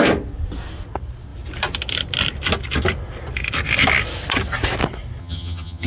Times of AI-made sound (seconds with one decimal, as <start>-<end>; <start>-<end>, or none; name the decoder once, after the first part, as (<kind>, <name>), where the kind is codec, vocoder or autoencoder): 5.2-5.9 (vocoder, HiFi-GAN)